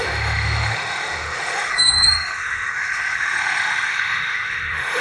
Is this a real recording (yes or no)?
no